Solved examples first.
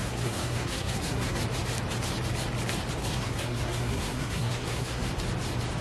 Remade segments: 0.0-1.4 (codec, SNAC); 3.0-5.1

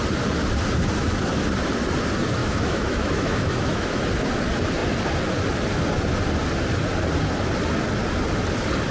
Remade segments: 2.4-4.0 (autoencoder, DAC-VAE)

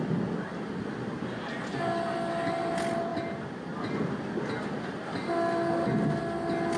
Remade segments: none

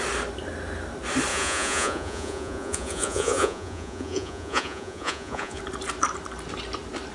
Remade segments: 1.3-5.6 (vocoder, Vocos)

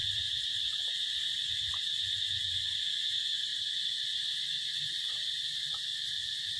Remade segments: none